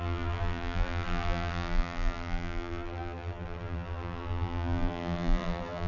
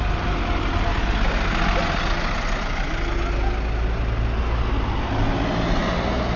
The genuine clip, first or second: second